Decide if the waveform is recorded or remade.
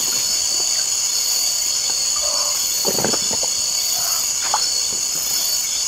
recorded